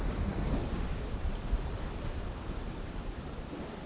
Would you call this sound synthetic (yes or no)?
yes